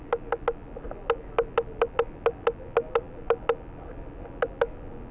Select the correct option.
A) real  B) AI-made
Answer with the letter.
A